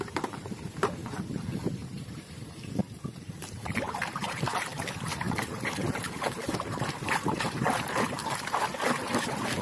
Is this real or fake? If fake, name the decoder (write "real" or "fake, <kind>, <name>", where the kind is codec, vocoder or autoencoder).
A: fake, vocoder, BigVGAN v2